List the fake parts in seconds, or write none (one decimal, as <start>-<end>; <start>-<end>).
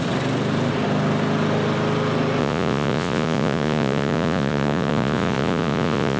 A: 2.4-6.2